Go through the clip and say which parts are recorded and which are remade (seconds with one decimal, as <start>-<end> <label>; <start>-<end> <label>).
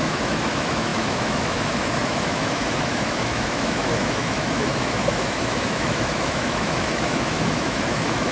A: 0.0-8.3 remade